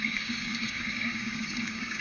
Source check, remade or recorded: remade